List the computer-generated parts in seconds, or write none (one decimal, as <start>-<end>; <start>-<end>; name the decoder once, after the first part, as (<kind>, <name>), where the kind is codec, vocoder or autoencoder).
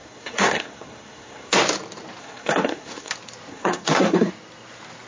0.0-1.5 (codec, SNAC); 2.2-3.1; 3.5-4.3